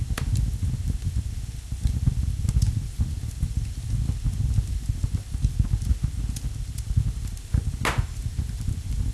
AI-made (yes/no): no